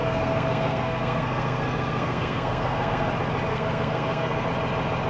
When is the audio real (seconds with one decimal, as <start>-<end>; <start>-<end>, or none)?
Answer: 3.1-3.5; 4.5-5.1